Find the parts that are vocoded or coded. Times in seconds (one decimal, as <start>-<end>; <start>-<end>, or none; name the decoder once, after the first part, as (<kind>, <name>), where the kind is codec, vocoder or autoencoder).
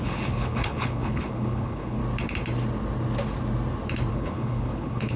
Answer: 0.0-2.0 (codec, HILCodec); 4.1-5.2